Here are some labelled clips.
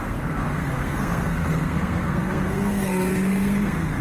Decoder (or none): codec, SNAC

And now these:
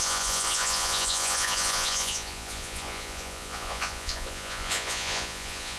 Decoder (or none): vocoder, Vocos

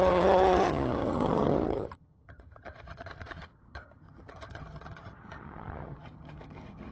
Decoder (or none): vocoder, HiFi-GAN